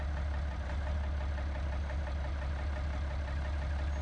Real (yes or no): yes